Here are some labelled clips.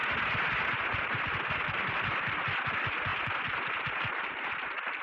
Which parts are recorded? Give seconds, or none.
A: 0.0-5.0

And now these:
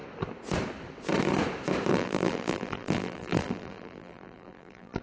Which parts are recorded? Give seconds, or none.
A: 0.0-1.9

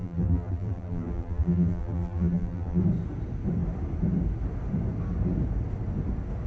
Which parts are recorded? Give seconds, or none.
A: 2.8-6.5